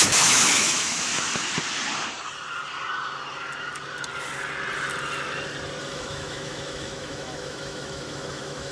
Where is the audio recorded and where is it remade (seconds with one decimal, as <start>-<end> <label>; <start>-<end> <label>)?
0.0-1.1 remade; 1.1-5.8 recorded; 5.8-8.7 remade